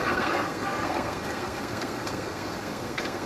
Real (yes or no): no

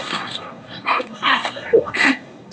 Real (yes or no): no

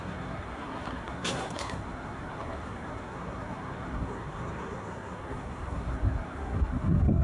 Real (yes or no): no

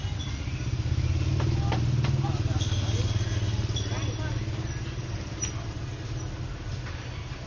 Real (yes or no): yes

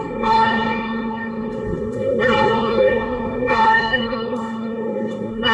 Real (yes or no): no